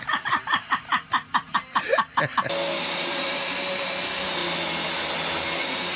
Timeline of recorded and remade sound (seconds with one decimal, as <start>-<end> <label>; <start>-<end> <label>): 0.0-1.9 remade; 1.9-2.8 recorded; 2.8-4.4 remade; 4.4-6.0 recorded